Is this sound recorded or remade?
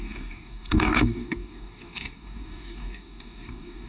remade